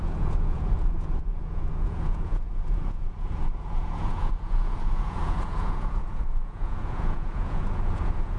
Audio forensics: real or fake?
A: fake